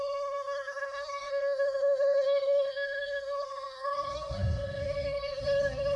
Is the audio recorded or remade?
remade